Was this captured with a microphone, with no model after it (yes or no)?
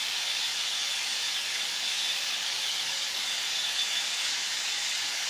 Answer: no